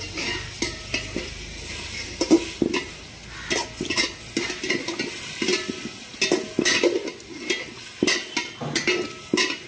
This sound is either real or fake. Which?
real